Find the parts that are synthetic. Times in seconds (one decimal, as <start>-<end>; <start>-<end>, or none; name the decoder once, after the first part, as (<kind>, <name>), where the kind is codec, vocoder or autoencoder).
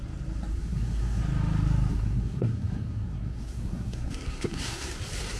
0.5-1.2 (codec, SNAC); 1.9-5.0